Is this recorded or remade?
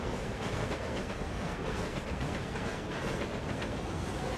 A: remade